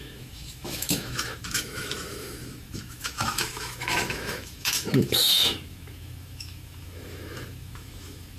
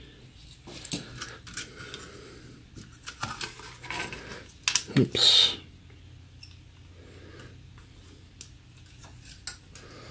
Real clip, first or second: second